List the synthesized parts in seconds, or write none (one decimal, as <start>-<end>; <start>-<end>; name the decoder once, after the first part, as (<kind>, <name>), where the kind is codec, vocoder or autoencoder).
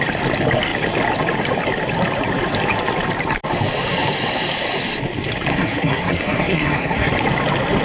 5.5-7.1 (codec, SNAC)